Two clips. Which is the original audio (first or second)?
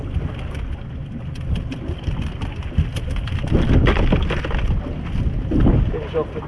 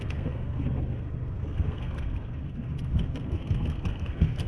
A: first